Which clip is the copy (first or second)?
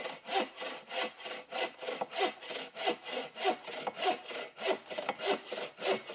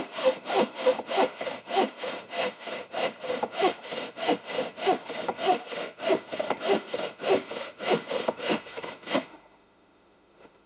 second